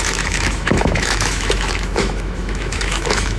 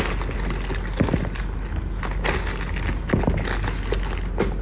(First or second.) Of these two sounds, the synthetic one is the first